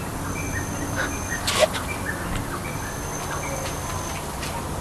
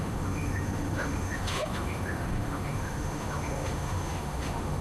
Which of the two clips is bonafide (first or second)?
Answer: first